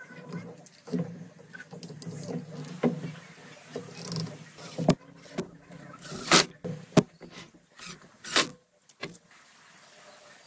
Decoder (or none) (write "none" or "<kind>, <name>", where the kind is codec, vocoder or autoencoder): none